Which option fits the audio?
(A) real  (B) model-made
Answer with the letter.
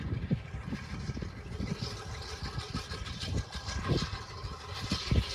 A